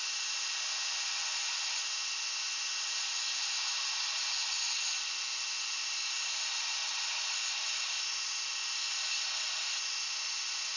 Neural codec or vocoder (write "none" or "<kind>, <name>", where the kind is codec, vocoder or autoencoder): none